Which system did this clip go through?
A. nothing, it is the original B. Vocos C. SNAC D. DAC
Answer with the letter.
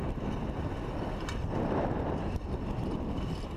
A